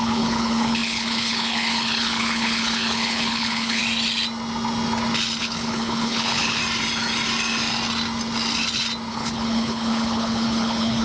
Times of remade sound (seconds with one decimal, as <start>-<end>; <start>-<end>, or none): 0.0-3.8; 5.4-6.6; 9.1-11.0